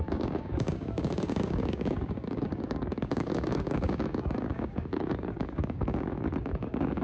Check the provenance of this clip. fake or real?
fake